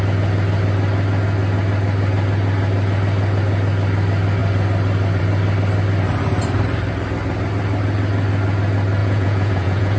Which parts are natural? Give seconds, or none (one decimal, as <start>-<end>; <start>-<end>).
0.0-9.0